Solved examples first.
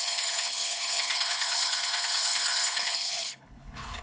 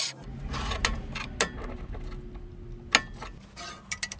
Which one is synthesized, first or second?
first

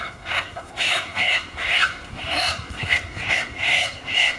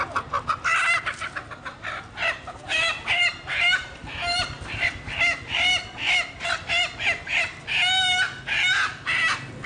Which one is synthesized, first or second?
first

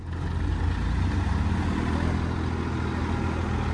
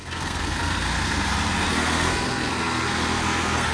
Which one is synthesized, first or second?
second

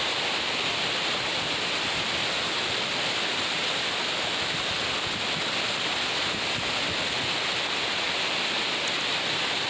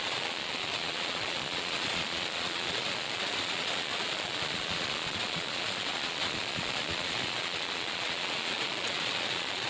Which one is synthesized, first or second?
second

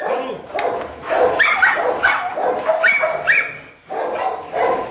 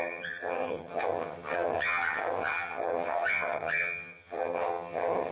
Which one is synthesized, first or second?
second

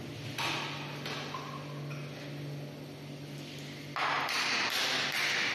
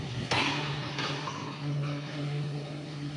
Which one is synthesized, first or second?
second